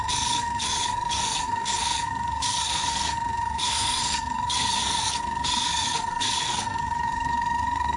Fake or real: fake